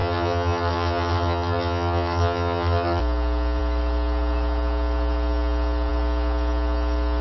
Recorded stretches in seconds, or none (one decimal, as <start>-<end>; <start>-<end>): 3.0-7.2